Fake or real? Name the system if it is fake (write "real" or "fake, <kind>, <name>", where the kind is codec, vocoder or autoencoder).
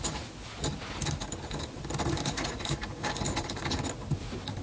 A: real